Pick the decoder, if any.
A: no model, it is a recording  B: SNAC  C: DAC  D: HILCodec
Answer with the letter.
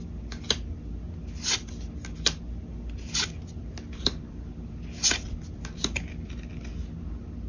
A